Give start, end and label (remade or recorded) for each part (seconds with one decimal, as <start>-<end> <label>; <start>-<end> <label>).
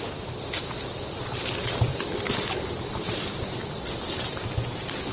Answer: 0.0-1.9 recorded; 1.9-3.9 remade; 3.9-5.1 recorded